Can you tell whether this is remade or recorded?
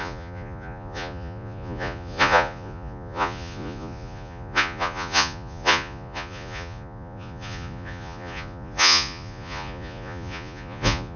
remade